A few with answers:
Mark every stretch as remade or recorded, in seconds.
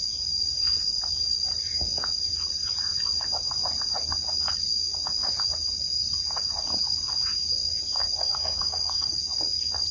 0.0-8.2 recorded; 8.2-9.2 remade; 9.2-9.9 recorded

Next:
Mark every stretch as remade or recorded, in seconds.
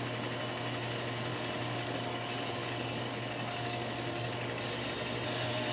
0.0-1.3 recorded; 1.3-4.7 remade; 4.7-5.7 recorded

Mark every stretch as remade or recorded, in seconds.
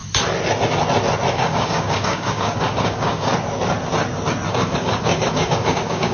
0.0-1.3 recorded; 1.3-3.3 remade; 3.3-4.5 recorded; 4.5-6.1 remade